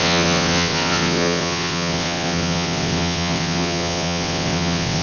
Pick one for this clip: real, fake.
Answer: fake